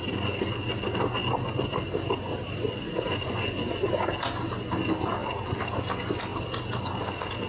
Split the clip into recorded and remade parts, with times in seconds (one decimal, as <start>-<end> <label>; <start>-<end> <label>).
0.0-5.2 recorded; 5.2-5.7 remade; 5.7-7.5 recorded